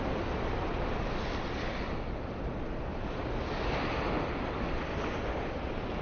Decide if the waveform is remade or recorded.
recorded